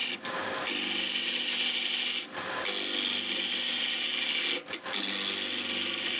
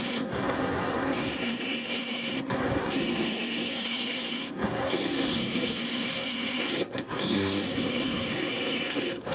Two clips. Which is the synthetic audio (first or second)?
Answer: second